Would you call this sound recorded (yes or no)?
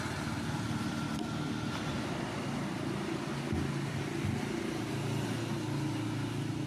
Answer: yes